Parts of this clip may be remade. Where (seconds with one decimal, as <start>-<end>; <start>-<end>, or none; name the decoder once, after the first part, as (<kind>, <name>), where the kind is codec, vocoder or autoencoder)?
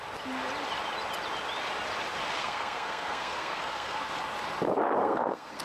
2.4-4.1 (codec, SNAC); 5.0-5.6